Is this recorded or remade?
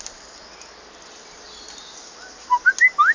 recorded